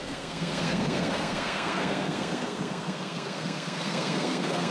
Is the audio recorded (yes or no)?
no